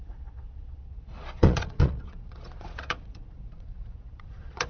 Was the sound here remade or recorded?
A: remade